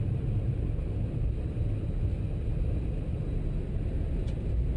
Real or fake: real